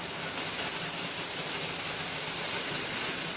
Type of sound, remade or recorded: recorded